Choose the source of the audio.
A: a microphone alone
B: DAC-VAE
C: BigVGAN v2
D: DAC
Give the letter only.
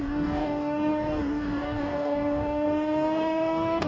D